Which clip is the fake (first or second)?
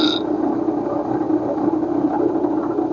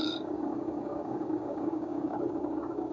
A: second